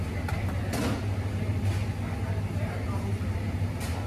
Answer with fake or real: real